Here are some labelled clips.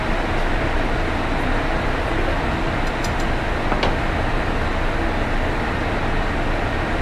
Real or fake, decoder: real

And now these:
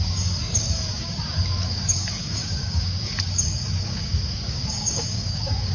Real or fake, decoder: fake, codec, DAC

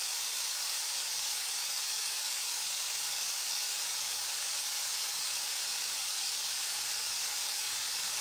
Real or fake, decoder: fake, codec, DAC